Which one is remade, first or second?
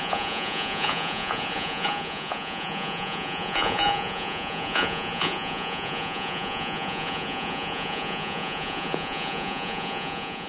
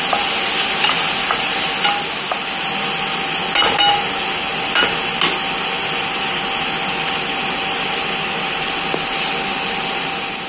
first